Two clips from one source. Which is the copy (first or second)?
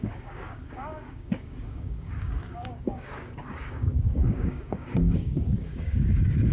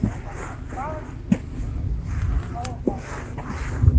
first